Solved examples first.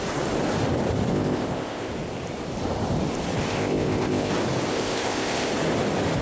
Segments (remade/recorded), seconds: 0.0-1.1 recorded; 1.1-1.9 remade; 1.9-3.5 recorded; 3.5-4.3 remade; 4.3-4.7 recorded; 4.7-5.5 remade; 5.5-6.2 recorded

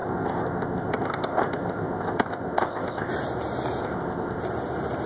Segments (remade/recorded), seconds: 0.0-3.1 remade; 3.1-3.8 recorded; 3.8-4.4 remade; 4.4-5.1 recorded

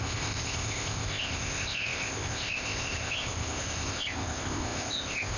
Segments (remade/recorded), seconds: 0.0-5.4 remade

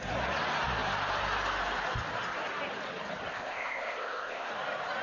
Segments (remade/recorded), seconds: 0.0-3.3 recorded; 3.3-4.5 remade; 4.5-5.0 recorded

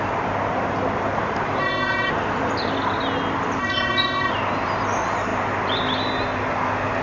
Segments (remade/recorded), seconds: 0.0-1.6 recorded; 1.6-2.1 remade; 2.1-3.6 recorded; 3.6-4.3 remade; 4.3-7.0 recorded

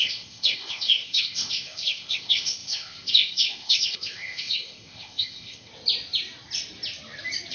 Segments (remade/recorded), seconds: 0.0-5.7 remade; 5.7-7.5 recorded

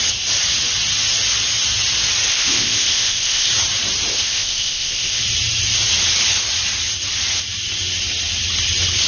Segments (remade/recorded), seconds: 0.0-2.3 recorded; 2.3-3.5 remade; 3.5-4.1 recorded; 4.1-5.2 remade; 5.2-9.1 recorded